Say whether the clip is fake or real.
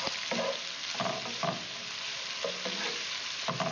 real